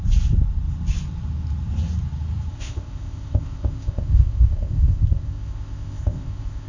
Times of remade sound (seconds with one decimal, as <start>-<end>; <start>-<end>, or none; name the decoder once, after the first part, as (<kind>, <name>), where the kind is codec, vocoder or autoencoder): 2.5-6.7 (codec, ZipCodec)